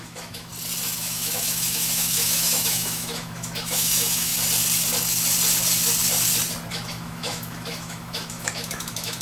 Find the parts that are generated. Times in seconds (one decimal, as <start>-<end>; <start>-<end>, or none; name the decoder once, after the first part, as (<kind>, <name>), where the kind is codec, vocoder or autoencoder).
0.0-0.5 (autoencoder, DAC-VAE); 1.0-4.3; 6.7-9.2